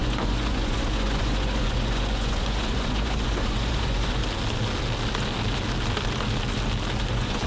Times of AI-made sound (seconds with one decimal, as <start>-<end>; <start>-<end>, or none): 0.0-4.2; 7.0-7.5